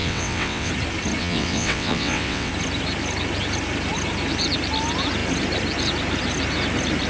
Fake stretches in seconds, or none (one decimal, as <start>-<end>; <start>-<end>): 0.0-0.7; 1.2-2.5